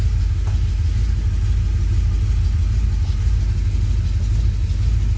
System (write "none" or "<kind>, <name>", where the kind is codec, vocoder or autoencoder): none